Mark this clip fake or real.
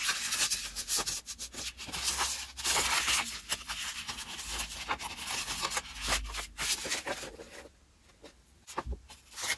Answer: real